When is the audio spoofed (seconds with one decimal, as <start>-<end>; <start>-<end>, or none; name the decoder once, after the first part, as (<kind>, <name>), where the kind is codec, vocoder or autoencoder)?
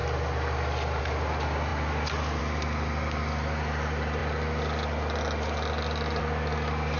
none